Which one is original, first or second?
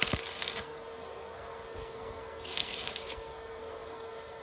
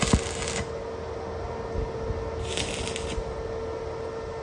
second